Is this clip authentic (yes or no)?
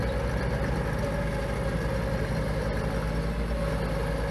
yes